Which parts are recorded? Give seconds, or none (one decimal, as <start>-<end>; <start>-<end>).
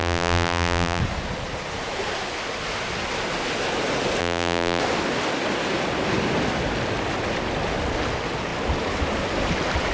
1.0-4.2; 4.8-9.9